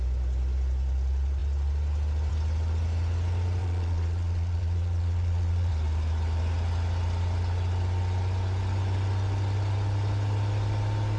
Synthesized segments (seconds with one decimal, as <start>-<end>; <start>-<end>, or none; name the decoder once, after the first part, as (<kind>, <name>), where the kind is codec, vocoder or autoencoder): 3.6-5.7 (vocoder, Vocos)